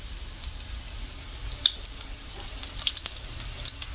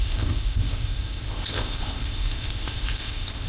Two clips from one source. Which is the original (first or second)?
first